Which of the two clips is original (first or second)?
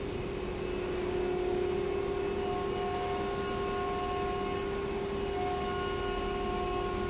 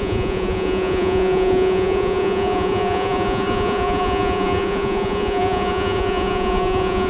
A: first